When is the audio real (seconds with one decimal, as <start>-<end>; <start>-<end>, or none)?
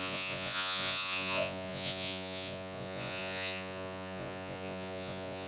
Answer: none